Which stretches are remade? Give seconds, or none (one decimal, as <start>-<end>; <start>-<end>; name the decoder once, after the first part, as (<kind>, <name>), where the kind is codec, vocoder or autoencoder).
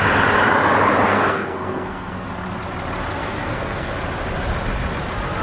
1.1-2.3 (codec, SNAC); 3.2-3.9